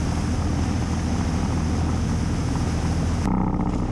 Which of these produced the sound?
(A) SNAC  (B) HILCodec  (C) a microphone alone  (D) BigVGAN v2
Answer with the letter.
C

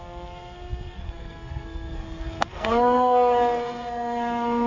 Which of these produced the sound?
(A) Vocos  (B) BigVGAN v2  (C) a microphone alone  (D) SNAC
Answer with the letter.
D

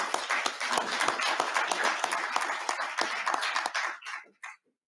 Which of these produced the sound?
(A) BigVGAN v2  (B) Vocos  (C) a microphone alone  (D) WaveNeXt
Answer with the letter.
C